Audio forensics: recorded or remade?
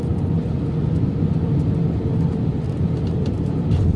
recorded